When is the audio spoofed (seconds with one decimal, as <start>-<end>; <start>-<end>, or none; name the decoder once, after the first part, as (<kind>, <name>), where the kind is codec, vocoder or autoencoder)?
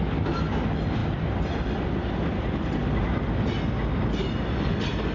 none